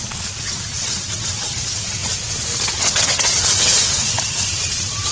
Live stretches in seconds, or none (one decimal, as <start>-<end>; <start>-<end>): 2.0-2.7